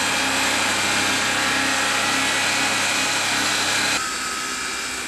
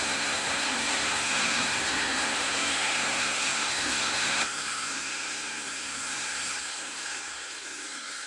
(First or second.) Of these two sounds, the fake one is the second